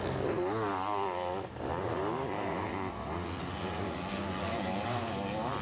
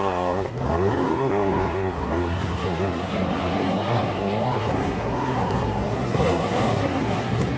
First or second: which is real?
first